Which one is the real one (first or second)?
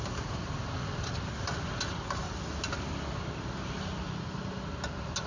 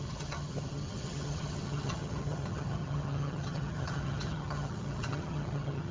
first